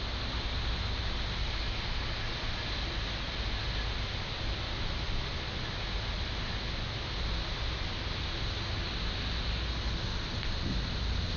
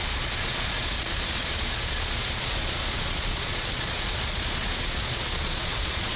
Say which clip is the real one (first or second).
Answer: first